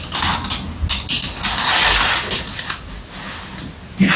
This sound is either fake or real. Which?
real